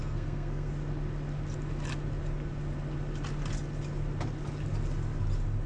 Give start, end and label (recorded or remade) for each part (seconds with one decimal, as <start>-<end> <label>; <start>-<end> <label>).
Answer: 0.0-0.7 remade; 0.7-5.7 recorded